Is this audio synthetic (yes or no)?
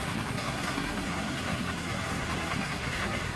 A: yes